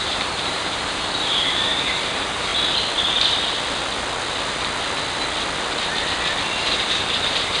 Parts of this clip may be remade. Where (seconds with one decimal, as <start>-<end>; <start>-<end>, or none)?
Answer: 0.0-2.5; 6.8-7.6